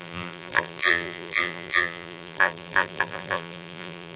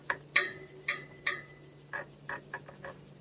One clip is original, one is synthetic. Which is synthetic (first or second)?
first